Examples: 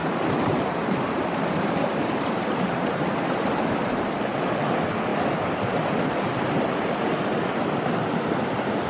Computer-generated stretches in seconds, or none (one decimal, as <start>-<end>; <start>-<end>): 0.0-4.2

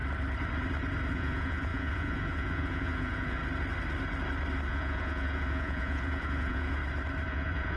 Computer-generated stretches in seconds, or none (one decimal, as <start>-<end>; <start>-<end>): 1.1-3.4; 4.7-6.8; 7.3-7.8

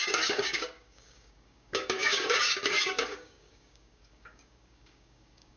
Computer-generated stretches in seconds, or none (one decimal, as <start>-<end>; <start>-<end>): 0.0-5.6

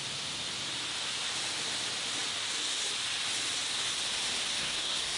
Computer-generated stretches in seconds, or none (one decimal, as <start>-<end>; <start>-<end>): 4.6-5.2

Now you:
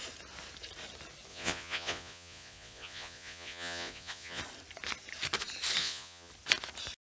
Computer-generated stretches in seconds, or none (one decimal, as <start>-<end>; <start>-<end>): 1.3-4.4; 5.8-6.3

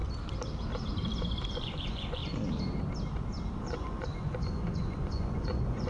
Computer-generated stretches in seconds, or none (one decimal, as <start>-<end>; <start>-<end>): 1.5-2.2; 3.6-5.9

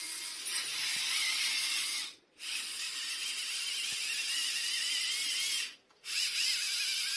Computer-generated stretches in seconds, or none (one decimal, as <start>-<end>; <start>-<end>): 0.9-3.1

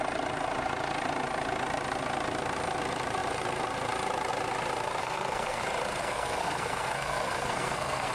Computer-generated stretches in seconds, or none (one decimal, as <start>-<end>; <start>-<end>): 5.0-5.6; 6.0-8.1